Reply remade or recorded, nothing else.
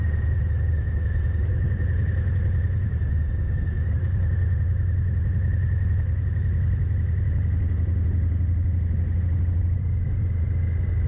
recorded